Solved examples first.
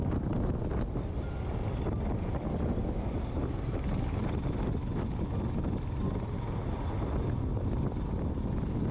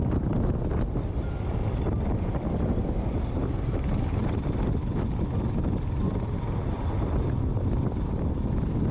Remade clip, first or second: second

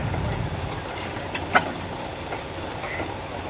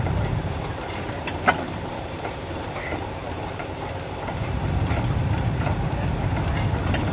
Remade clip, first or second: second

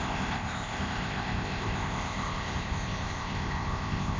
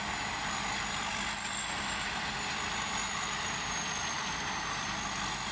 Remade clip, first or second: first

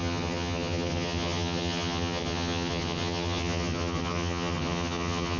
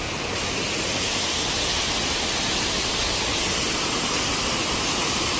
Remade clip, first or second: first